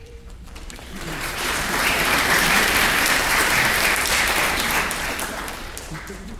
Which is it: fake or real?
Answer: fake